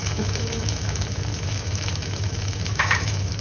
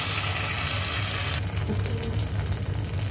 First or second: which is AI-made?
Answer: first